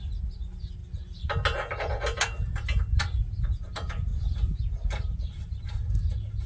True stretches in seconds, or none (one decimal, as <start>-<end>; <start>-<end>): 0.0-4.1; 5.6-6.5